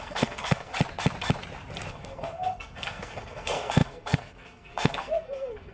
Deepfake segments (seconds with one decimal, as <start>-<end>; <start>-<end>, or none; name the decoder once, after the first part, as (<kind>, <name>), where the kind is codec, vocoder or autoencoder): 0.0-0.7 (codec, SNAC); 1.9-5.7